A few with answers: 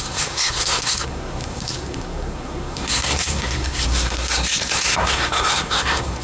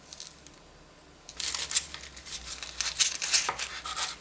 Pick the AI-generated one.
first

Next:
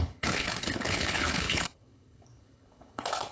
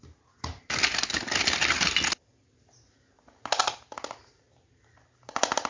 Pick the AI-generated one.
first